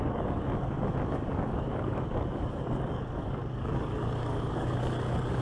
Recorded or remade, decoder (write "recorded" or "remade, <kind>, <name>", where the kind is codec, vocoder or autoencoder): remade, codec, DAC